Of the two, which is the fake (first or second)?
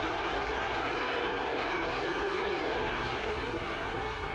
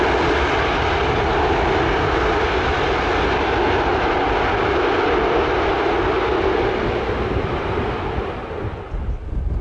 first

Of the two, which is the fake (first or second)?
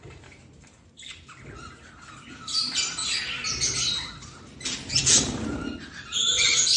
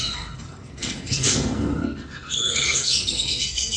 second